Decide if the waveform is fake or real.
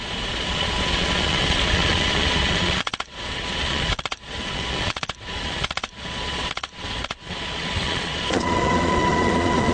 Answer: fake